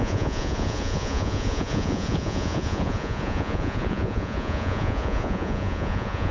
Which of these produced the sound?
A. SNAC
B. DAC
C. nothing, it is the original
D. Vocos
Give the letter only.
D